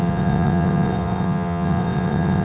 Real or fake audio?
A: fake